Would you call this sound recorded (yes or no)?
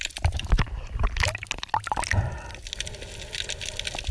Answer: yes